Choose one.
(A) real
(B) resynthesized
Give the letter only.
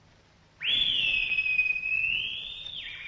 A